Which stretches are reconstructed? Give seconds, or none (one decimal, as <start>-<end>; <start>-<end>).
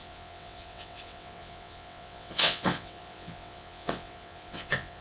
0.0-5.0